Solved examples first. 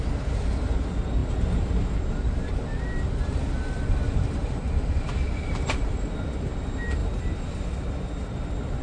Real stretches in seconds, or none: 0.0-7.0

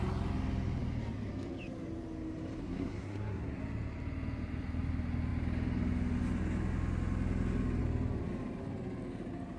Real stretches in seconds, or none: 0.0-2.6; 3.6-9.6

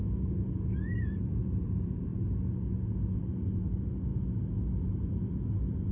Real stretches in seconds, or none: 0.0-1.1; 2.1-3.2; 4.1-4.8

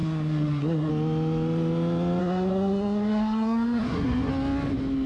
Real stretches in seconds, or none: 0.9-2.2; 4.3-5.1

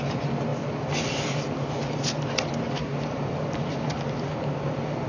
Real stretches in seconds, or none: 0.0-5.1